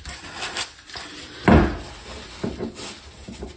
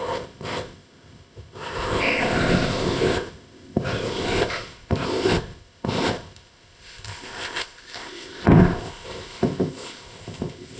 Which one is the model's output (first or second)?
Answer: second